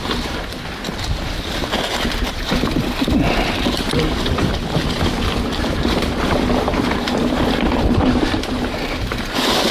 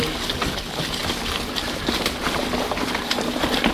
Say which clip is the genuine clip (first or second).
second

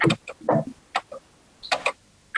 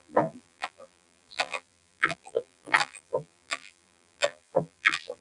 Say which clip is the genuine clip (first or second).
first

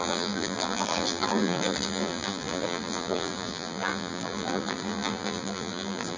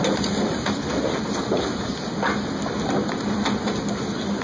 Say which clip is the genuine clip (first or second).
second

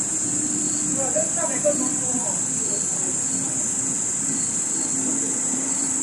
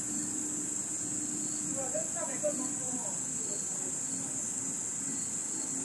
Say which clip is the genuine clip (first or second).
second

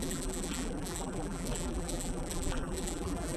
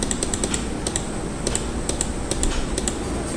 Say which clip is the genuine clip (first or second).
second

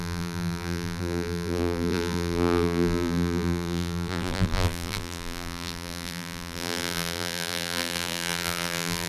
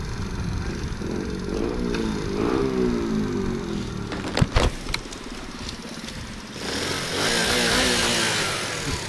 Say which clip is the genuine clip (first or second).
second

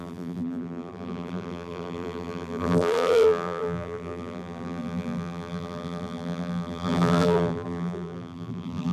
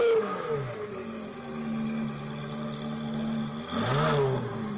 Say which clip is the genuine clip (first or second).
second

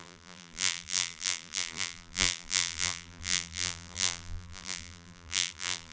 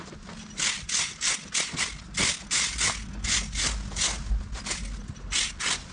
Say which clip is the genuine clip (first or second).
second